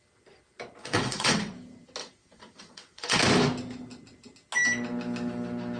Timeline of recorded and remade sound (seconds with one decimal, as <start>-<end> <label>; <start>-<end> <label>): 0.0-0.8 recorded; 0.8-1.5 remade; 1.5-2.0 recorded; 2.0-3.2 remade; 3.2-5.8 recorded

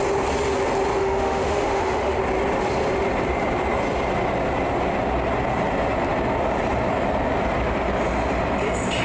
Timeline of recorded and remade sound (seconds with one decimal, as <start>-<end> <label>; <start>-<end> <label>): 0.0-1.0 recorded; 1.0-2.2 remade; 2.2-9.0 recorded

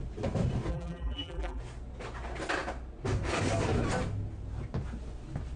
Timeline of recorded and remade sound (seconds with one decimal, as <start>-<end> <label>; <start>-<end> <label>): 0.0-0.7 recorded; 0.7-1.6 remade; 1.6-5.6 recorded

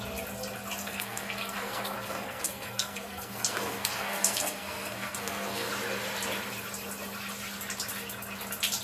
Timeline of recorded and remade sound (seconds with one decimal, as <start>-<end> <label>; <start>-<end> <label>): 0.0-0.8 recorded; 0.8-5.7 remade; 5.7-8.8 recorded

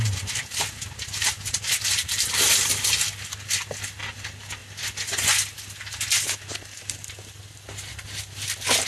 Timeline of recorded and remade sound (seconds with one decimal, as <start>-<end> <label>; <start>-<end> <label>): 0.0-8.9 recorded